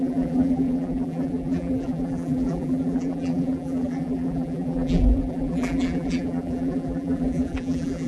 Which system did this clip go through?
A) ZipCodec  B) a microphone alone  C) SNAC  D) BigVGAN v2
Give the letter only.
D